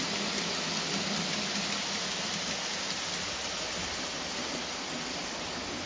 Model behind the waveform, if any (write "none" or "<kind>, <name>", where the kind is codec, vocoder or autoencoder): none